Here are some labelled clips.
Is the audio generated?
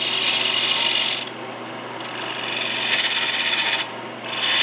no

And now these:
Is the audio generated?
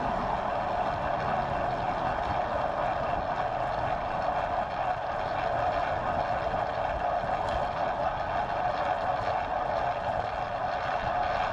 no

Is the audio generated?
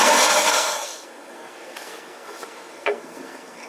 yes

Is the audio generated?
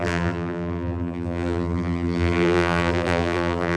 yes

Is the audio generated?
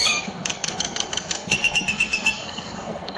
yes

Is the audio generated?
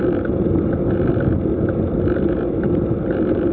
no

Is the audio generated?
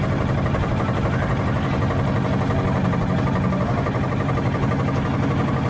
no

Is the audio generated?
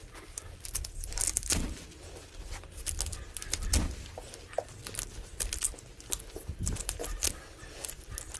no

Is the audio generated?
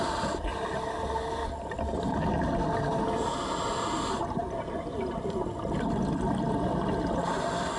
no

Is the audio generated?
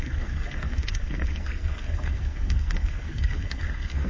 yes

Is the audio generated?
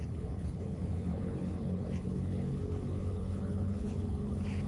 yes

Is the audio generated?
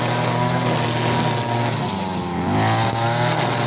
no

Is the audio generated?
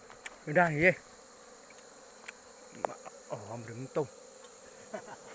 no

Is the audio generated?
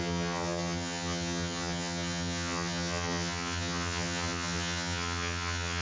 yes